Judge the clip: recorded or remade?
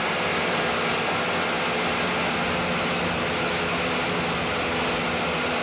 recorded